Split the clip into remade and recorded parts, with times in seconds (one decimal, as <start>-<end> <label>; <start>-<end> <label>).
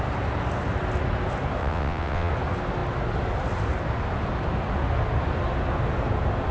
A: 0.0-1.6 recorded; 1.6-2.3 remade; 2.3-6.5 recorded